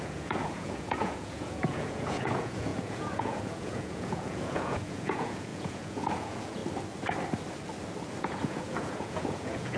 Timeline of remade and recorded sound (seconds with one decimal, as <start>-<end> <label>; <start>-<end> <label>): 0.0-6.6 remade; 6.6-8.2 recorded; 8.2-9.8 remade